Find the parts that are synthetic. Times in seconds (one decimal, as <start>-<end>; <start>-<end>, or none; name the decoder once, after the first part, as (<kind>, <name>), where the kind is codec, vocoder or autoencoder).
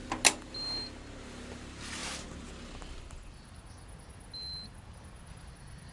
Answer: none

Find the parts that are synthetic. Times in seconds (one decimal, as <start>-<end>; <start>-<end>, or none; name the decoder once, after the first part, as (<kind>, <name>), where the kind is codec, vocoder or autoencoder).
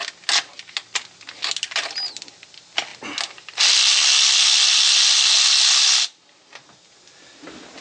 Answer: none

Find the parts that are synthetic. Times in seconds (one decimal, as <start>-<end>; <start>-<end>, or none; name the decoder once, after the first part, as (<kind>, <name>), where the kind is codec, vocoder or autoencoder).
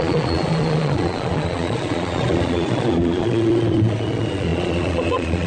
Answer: 0.0-5.5 (vocoder, Vocos)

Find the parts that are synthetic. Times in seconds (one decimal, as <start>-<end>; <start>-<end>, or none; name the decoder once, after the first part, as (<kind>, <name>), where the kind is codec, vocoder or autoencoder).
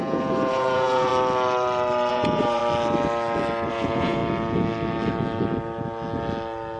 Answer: 0.0-1.1 (vocoder, Vocos); 2.1-2.6; 3.7-4.2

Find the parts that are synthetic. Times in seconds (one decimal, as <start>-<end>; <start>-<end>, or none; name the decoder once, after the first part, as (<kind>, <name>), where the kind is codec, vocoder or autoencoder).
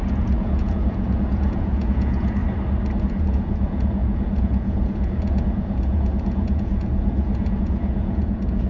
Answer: 0.0-2.4 (vocoder, Vocos); 3.0-8.7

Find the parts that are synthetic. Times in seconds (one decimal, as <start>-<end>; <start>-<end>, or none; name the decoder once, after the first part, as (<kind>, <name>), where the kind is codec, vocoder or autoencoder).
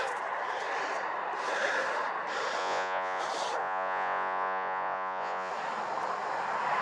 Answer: 2.6-3.2 (vocoder, Vocos); 3.6-5.5